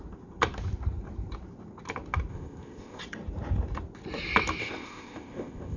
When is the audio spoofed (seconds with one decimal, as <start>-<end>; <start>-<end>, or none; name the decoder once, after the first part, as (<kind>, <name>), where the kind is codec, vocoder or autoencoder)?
2.3-3.0 (codec, ZipCodec); 4.6-5.8